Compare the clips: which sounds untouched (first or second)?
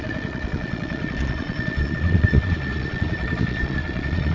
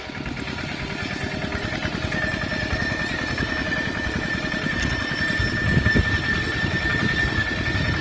second